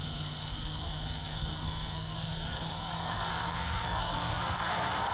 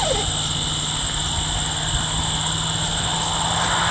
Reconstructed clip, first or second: first